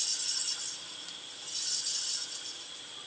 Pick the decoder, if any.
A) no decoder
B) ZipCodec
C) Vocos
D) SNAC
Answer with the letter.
A